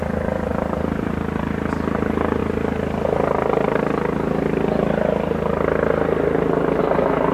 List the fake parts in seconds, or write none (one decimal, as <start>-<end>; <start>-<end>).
0.5-1.1